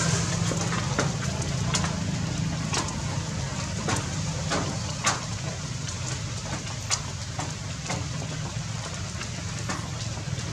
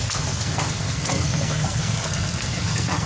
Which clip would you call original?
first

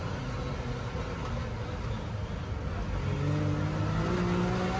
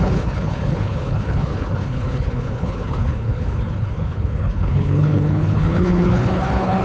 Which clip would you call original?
first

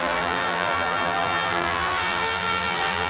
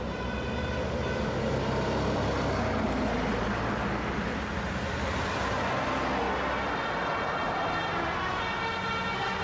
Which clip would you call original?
second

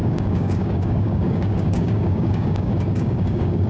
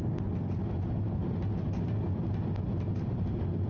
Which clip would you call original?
second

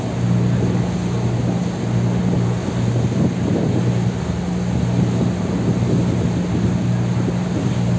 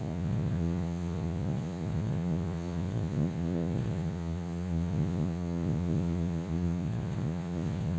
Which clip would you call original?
first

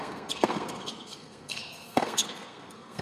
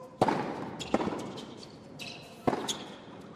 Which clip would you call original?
second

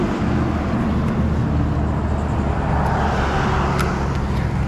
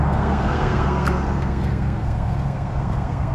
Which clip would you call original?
first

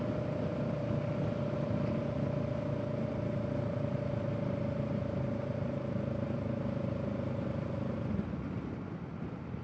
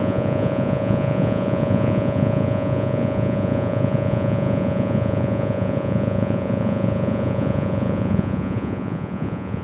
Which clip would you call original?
first